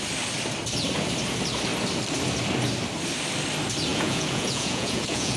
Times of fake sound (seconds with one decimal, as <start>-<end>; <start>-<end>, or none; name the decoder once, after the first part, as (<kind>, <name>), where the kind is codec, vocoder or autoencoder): 3.9-5.4 (vocoder, Vocos)